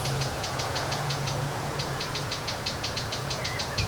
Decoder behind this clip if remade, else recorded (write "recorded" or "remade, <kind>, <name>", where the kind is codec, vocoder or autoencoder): remade, vocoder, Vocos